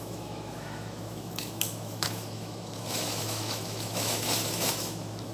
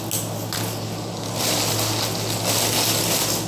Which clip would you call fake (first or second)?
first